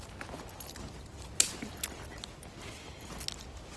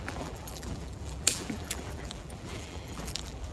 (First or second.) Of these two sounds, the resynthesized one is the second